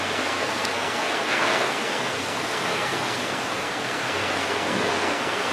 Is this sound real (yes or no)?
no